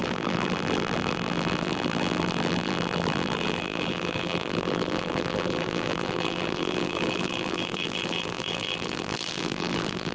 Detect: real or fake fake